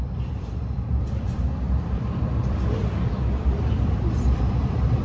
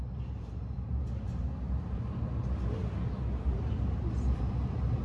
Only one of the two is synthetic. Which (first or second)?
first